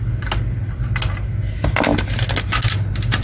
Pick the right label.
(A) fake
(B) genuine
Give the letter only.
B